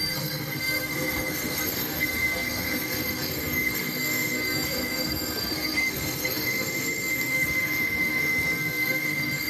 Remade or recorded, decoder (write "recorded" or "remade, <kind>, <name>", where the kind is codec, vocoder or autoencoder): remade, codec, SNAC